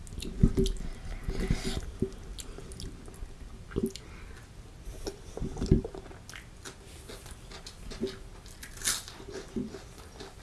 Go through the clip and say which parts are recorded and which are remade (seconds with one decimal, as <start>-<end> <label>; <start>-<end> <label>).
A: 0.0-10.4 recorded